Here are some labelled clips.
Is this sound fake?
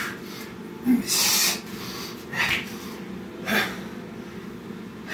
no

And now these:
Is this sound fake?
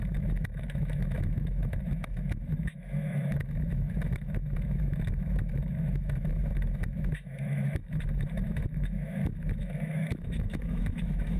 yes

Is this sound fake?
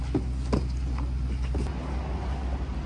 no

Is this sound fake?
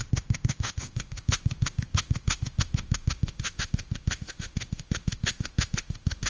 yes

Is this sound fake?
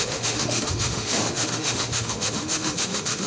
yes